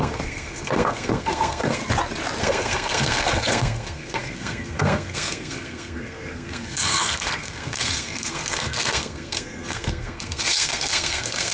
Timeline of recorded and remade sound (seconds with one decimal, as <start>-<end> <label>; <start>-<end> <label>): 0.0-1.8 remade; 1.8-2.4 recorded; 2.4-11.5 remade